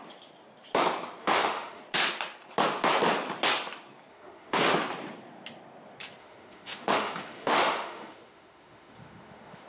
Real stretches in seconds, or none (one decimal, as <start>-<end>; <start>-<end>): 0.0-1.2; 1.8-4.1; 4.7-6.2